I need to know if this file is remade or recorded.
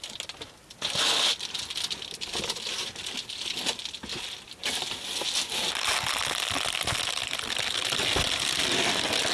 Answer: recorded